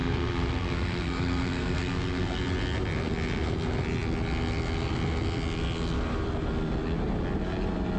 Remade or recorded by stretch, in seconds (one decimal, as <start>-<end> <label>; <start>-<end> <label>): 0.0-2.4 remade; 2.4-8.0 recorded

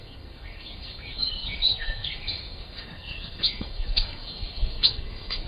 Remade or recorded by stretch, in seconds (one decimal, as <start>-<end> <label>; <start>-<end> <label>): 0.0-5.5 remade

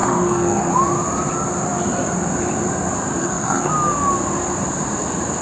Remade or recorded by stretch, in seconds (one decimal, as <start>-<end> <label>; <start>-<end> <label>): 0.0-0.7 remade; 0.7-3.2 recorded; 3.2-3.7 remade; 3.7-5.4 recorded

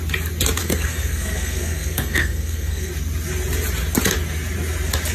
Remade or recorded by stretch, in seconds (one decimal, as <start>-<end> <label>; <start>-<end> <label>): 0.0-0.6 recorded; 0.6-2.9 remade; 2.9-5.1 recorded

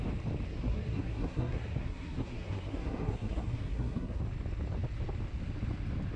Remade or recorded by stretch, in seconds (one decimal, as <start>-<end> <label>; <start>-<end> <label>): 0.0-0.5 recorded; 0.5-4.2 remade; 4.2-6.2 recorded

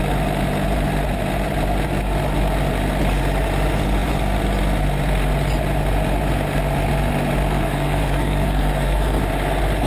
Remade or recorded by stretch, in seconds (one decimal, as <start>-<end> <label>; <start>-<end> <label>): 0.0-7.5 recorded; 7.5-9.2 remade; 9.2-9.9 recorded